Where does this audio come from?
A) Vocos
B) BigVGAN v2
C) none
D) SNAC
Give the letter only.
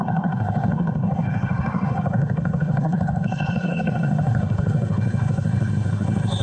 D